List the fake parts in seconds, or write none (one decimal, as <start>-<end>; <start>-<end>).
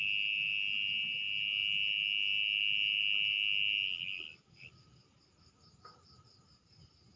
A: none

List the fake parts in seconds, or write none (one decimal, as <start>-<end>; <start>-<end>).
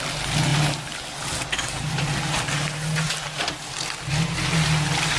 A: none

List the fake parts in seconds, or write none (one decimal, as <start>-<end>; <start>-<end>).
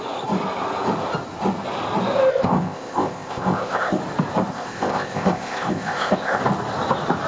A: 2.3-4.0; 4.5-6.4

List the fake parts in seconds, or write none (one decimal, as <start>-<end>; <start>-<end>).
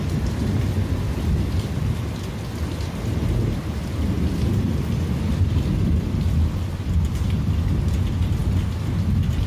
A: none